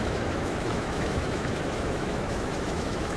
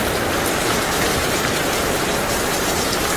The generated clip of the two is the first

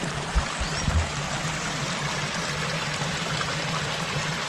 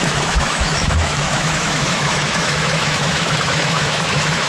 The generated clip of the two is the second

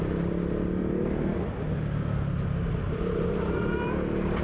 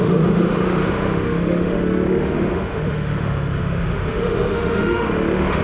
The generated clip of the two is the second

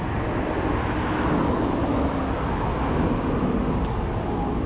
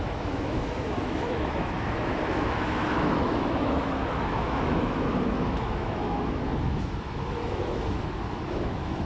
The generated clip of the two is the second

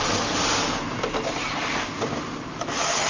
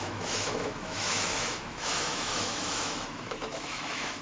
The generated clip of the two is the second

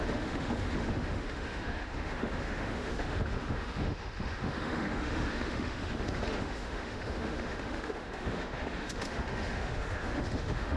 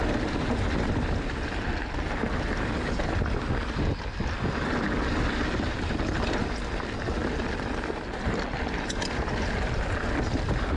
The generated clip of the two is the first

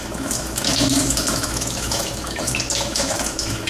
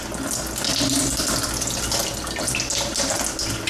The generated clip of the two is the first